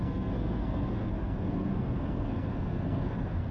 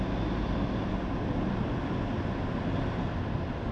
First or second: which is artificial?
first